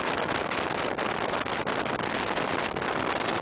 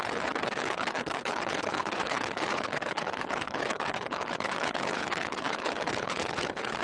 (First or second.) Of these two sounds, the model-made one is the second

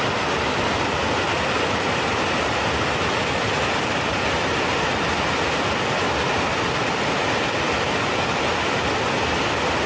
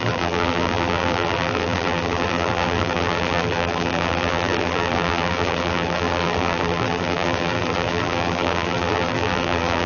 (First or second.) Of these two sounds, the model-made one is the second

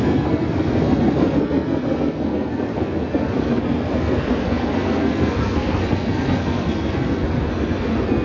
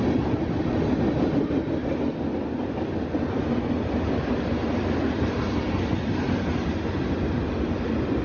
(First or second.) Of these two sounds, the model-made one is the first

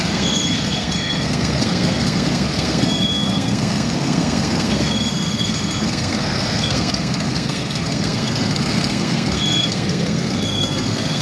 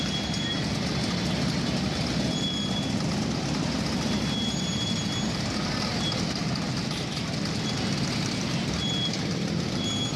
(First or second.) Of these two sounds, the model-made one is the first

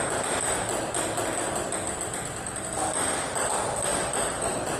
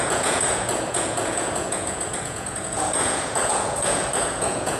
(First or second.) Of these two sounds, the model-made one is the second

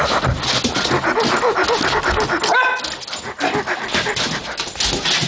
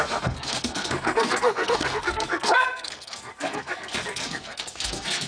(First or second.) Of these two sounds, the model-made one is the second